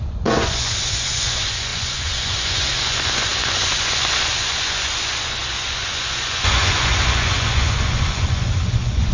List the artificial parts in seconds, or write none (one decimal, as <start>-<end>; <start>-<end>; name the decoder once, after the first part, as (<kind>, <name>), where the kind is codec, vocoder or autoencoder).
0.0-9.1 (vocoder, Vocos)